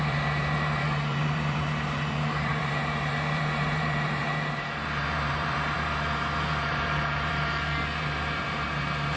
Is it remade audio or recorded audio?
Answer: remade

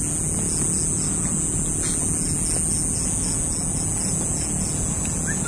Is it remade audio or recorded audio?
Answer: recorded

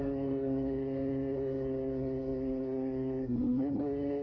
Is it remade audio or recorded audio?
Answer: remade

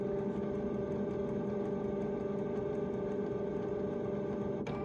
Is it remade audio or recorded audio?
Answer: recorded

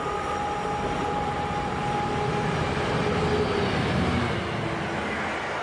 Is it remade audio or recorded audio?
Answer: recorded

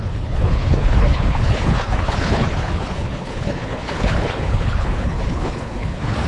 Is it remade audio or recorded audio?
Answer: remade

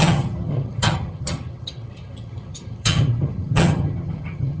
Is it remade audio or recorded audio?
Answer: remade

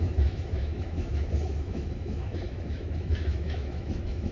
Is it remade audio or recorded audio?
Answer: remade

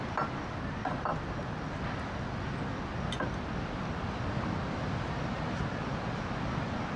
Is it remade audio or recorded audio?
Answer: recorded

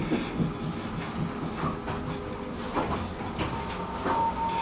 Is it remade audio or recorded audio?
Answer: recorded